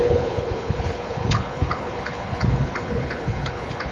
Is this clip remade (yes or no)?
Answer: yes